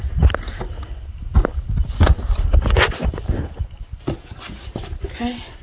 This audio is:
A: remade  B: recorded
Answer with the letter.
B